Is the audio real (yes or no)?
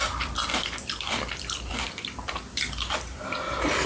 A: no